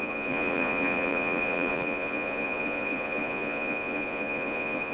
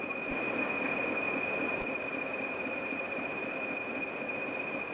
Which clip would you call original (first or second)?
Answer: second